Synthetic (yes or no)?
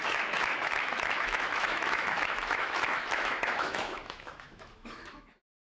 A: yes